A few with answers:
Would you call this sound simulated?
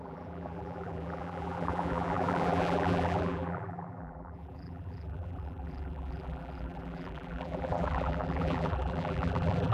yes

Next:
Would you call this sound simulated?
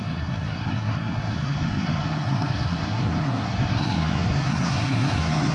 yes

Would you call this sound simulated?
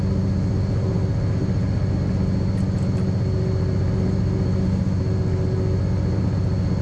no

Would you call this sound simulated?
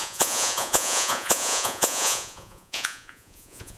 yes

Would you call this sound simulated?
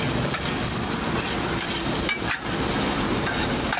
no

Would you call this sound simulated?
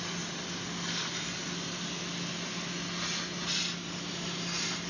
no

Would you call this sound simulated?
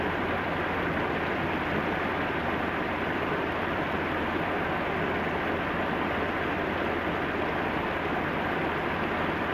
no